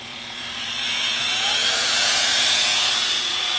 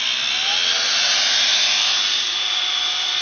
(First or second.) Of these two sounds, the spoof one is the first